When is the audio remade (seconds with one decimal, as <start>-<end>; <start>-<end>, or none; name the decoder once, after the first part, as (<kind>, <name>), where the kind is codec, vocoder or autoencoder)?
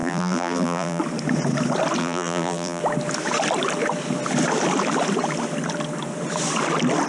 0.0-1.0 (vocoder, BigVGAN v2); 2.0-2.8